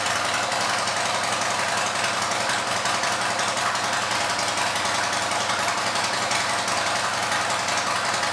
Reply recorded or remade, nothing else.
recorded